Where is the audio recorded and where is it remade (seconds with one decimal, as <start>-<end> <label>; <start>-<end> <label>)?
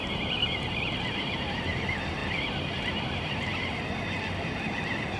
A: 0.0-2.2 remade; 2.2-2.8 recorded; 2.8-3.5 remade; 3.5-4.8 recorded; 4.8-5.2 remade